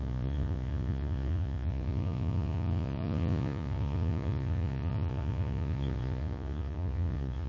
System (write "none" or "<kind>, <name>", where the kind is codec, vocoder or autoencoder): vocoder, Vocos